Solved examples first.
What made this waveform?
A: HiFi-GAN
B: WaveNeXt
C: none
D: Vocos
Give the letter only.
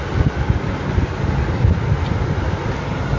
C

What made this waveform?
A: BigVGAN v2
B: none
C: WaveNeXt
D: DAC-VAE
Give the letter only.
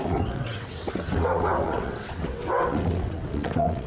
C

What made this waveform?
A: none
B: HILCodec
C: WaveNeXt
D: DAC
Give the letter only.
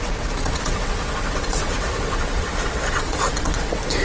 C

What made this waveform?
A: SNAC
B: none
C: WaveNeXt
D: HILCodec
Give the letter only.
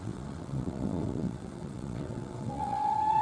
C